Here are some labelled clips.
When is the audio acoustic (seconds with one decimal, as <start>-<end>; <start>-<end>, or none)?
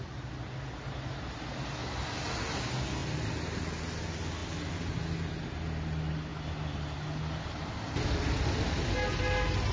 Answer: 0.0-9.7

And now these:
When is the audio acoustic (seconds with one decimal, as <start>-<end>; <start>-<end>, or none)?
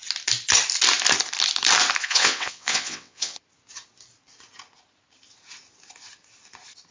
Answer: 0.0-2.0; 3.4-6.9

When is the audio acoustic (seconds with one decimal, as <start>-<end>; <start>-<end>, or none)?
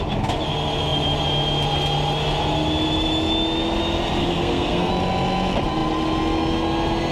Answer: 0.0-4.2; 4.9-7.1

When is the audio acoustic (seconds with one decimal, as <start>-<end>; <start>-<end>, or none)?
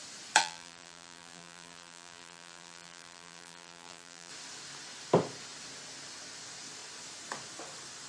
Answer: 0.0-0.4; 4.3-8.1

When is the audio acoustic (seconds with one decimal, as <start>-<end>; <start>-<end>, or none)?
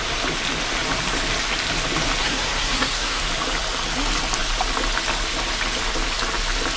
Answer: 0.0-2.2; 3.2-6.8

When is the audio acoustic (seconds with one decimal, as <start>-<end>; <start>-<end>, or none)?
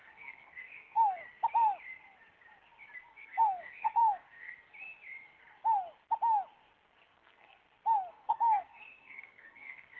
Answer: 1.2-3.1; 4.5-7.1; 7.6-8.1